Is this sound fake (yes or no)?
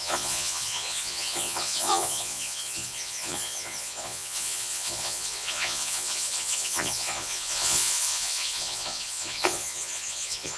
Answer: yes